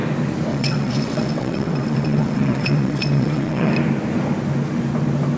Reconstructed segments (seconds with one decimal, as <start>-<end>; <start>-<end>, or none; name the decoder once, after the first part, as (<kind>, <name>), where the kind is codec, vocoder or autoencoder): 0.5-3.7 (vocoder, WaveNeXt)